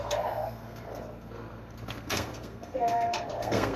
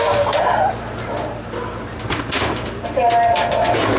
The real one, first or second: second